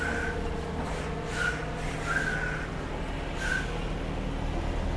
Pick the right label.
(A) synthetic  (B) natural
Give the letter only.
B